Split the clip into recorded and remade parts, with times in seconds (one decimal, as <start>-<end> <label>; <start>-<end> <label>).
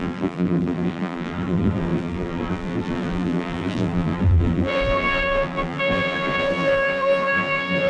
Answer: 0.0-7.9 remade